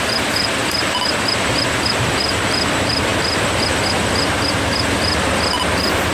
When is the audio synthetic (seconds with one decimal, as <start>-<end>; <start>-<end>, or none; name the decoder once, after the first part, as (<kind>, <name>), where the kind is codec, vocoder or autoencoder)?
0.0-3.1 (vocoder, BigVGAN v2); 4.4-6.1